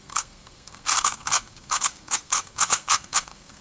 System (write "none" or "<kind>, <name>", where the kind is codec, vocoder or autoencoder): codec, SNAC